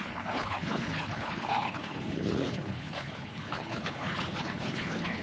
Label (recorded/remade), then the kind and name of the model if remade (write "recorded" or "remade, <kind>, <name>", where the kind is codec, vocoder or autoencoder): remade, codec, HILCodec